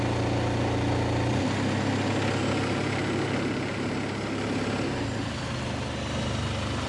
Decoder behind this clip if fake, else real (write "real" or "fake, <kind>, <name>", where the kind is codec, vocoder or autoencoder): real